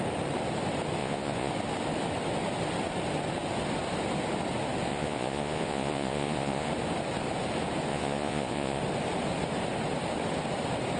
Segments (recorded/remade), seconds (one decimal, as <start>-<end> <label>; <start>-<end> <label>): 0.0-1.0 recorded; 1.0-1.5 remade; 1.5-4.9 recorded; 4.9-6.7 remade; 6.7-7.9 recorded; 7.9-8.8 remade; 8.8-11.0 recorded